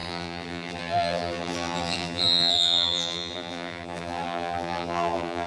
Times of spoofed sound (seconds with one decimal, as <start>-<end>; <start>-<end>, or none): 0.0-5.5